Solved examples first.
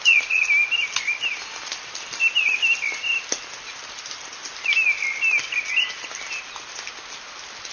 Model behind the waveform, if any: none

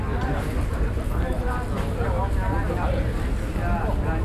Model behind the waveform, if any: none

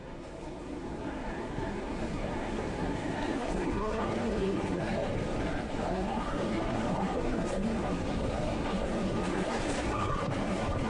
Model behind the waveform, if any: codec, SNAC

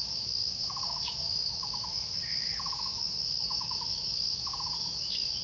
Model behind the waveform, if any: autoencoder, DAC-VAE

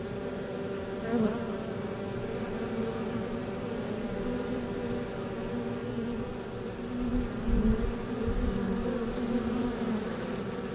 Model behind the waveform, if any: none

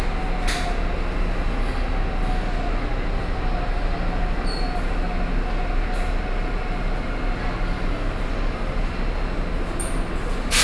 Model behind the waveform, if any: none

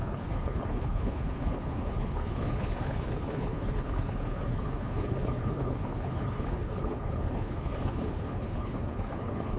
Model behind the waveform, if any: codec, HILCodec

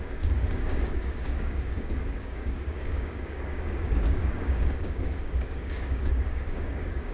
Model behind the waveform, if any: codec, DAC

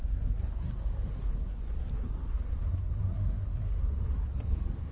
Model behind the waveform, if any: codec, SNAC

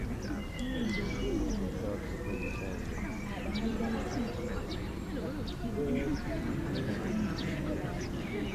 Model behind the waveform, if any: none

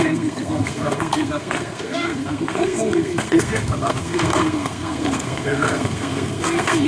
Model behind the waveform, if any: codec, SNAC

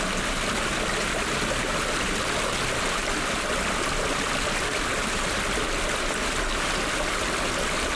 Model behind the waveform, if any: none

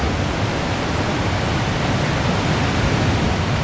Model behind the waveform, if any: none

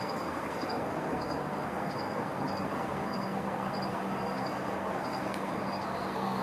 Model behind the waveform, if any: codec, SNAC